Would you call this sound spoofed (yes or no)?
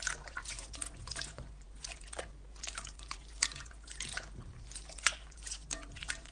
yes